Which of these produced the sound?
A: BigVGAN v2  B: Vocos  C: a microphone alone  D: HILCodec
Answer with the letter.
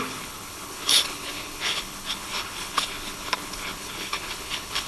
D